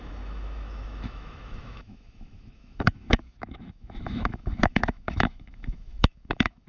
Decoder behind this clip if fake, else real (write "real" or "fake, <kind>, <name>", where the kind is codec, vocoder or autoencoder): fake, autoencoder, DAC-VAE